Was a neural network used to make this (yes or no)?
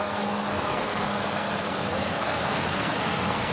yes